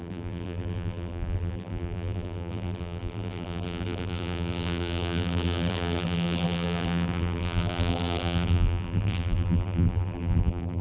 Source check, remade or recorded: remade